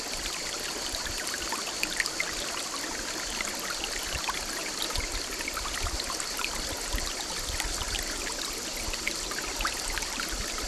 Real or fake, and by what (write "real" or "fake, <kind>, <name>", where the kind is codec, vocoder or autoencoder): real